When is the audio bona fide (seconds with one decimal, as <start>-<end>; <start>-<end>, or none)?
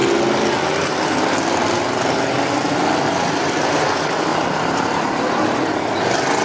0.0-4.3; 6.0-6.4